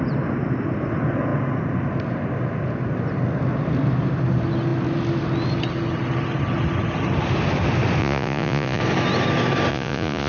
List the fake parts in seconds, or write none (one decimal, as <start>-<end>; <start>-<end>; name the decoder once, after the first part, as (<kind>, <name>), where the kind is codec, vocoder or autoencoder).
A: 8.0-8.8 (vocoder, Vocos); 9.7-10.3